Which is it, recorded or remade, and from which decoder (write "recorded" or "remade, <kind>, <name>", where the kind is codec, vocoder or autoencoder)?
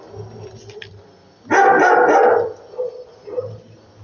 recorded